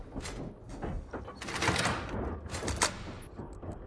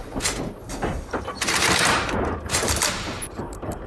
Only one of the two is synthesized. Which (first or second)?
second